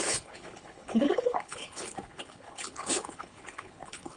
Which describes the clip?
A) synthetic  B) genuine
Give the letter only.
A